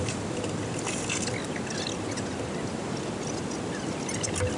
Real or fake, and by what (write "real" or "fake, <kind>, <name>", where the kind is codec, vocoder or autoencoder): real